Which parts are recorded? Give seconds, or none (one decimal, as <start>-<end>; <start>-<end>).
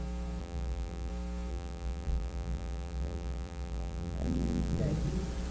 0.0-0.4; 1.1-1.5; 4.8-5.5